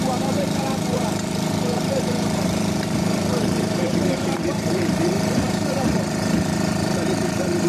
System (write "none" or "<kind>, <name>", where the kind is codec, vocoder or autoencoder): vocoder, BigVGAN v2